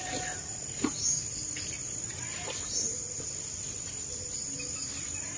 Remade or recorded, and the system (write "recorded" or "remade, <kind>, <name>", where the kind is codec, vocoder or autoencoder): recorded